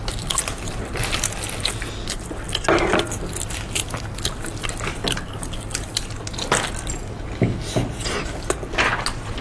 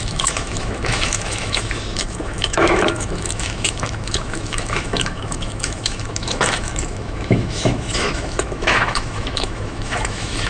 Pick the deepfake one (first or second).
second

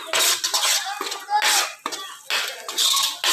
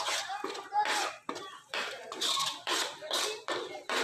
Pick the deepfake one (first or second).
second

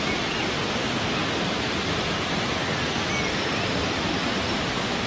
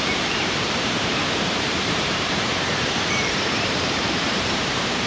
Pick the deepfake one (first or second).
second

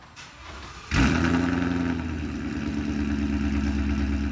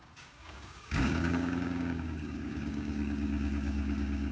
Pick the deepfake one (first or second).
second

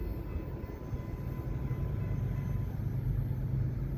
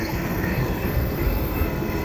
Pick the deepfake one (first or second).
second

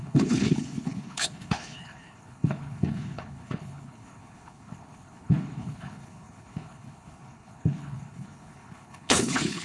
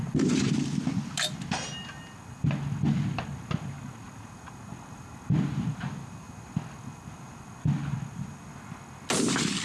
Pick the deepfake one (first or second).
first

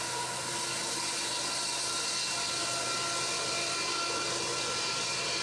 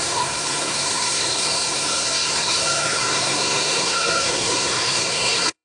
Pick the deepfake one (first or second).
second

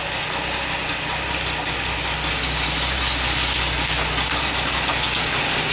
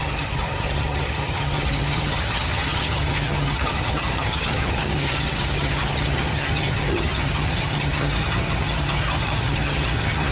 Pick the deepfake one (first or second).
second